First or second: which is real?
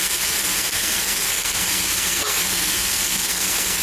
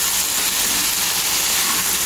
second